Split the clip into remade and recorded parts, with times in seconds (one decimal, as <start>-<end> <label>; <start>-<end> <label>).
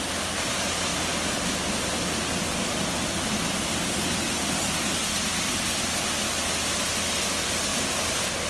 0.0-8.5 recorded